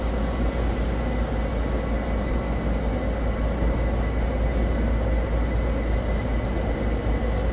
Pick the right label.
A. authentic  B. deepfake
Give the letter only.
A